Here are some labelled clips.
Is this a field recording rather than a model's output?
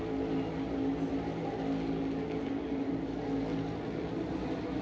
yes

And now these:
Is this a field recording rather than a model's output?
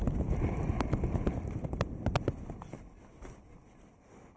yes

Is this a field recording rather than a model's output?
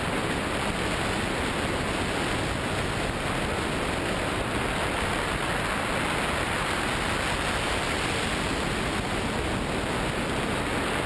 yes